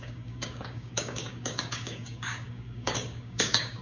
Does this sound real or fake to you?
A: fake